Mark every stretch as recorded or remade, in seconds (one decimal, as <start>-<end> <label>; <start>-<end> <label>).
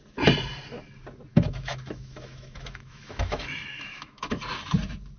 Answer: 0.0-1.3 recorded; 1.3-4.4 remade; 4.4-5.2 recorded